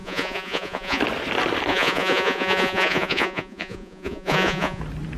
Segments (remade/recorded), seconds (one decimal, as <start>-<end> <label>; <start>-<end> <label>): 0.0-1.0 remade; 1.0-1.7 recorded; 1.7-4.8 remade; 4.8-5.2 recorded